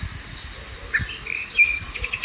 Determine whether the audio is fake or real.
real